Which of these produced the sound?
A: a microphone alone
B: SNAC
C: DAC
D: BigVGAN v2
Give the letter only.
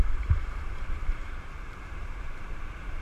D